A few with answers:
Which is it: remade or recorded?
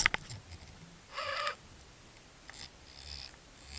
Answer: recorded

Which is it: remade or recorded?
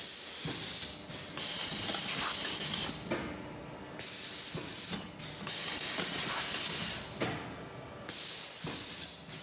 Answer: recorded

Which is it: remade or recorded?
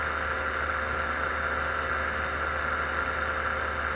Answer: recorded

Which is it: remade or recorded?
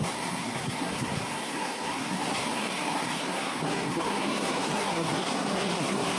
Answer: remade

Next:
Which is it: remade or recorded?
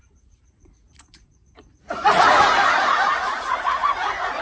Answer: remade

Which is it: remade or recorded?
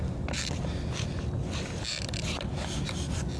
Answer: recorded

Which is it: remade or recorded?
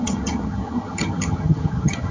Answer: remade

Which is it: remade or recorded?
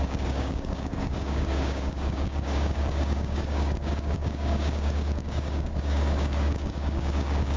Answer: remade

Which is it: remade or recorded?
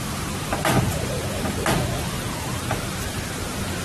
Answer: recorded